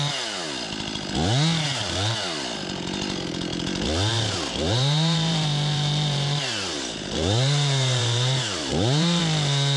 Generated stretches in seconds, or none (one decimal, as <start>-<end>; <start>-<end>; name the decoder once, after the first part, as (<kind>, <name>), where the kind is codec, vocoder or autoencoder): 4.1-9.2 (vocoder, BigVGAN v2)